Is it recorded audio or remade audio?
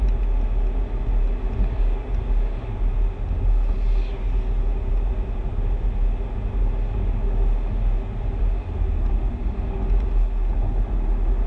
recorded